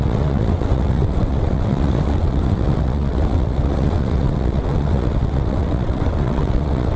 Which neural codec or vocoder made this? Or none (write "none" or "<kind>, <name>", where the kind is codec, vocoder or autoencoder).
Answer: vocoder, WaveNeXt